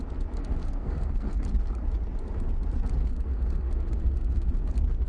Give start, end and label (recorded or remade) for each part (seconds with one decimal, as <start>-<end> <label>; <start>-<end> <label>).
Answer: 0.0-0.4 recorded; 0.4-1.4 remade; 1.4-3.0 recorded; 3.0-4.5 remade; 4.5-5.1 recorded